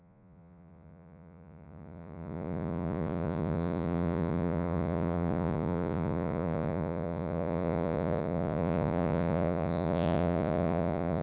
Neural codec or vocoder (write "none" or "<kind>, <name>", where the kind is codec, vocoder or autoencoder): vocoder, Vocos